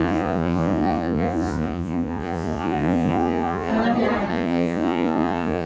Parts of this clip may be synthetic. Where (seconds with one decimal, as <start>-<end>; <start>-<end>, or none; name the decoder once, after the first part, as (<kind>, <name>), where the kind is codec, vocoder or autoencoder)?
0.0-3.7 (vocoder, Vocos); 4.3-5.7